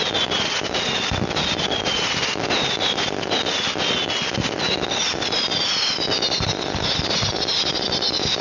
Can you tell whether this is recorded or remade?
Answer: recorded